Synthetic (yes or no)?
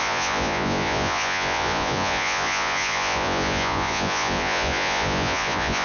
yes